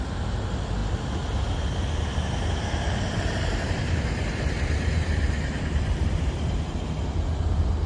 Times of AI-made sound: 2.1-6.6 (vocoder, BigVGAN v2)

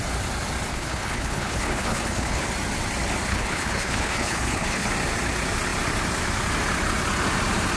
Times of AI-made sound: 0.7-2.4 (codec, HILCodec); 3.3-4.9

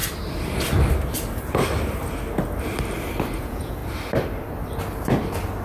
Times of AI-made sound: 3.4-3.8 (vocoder, Vocos)

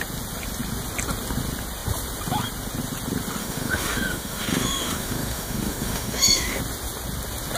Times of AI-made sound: 3.4-6.6 (autoencoder, DAC-VAE)

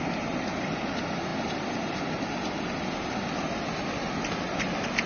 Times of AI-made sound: none